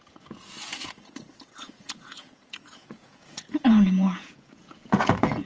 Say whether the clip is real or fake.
fake